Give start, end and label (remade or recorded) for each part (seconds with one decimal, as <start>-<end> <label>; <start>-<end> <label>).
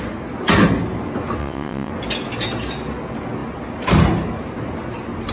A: 0.0-1.4 recorded; 1.4-1.9 remade; 1.9-5.3 recorded